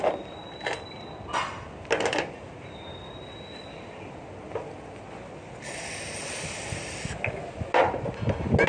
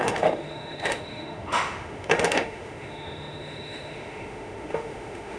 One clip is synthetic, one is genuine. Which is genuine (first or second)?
first